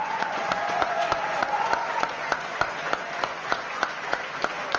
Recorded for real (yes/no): no